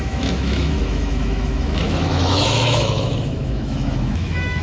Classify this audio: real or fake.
fake